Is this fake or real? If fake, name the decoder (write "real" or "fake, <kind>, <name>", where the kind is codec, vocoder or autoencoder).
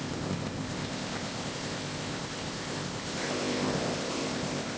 fake, codec, ZipCodec